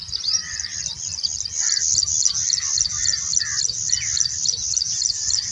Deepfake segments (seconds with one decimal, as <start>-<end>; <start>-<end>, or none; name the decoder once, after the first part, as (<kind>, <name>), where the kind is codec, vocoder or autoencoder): none